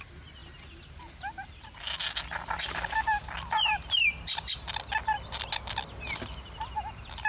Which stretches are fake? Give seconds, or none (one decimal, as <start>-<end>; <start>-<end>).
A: none